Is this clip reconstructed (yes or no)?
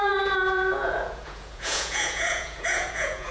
yes